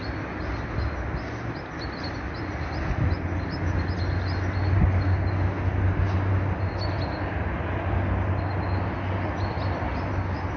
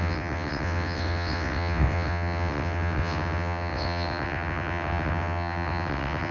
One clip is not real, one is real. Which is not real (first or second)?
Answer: second